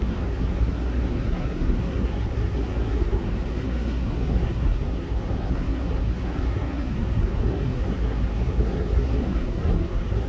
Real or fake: fake